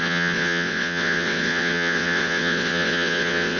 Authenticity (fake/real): fake